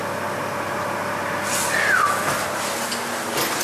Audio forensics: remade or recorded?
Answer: recorded